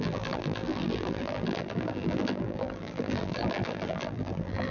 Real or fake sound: fake